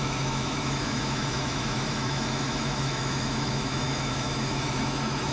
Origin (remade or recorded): remade